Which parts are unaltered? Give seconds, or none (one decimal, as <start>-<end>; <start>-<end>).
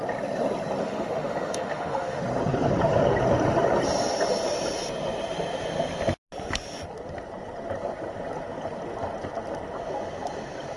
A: 0.0-0.8; 2.2-10.8